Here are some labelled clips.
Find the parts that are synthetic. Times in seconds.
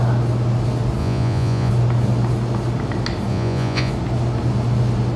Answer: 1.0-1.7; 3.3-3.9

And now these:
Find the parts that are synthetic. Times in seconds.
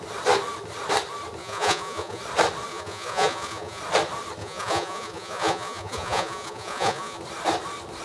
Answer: 1.4-2.2; 2.7-3.8; 4.4-7.2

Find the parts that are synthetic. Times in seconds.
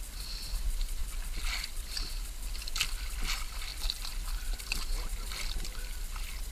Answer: none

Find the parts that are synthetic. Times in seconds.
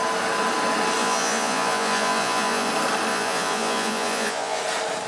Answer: 1.0-2.7; 3.1-4.6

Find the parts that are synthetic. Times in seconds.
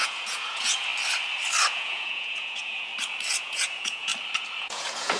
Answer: 0.0-0.9; 1.7-2.9; 3.4-4.1; 4.6-5.2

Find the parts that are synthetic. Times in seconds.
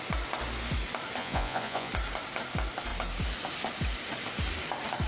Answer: 1.2-1.9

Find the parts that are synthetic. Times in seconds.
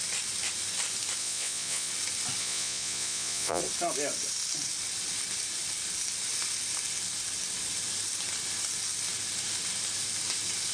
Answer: 1.2-1.9; 2.4-3.6